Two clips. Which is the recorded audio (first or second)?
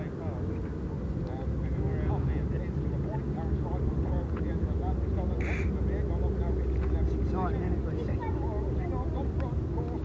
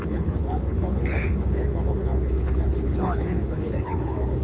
first